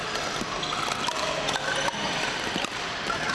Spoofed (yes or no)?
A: no